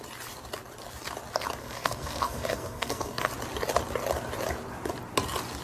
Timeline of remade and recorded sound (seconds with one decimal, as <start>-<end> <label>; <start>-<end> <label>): 0.0-1.6 recorded; 1.6-3.3 remade; 3.3-5.6 recorded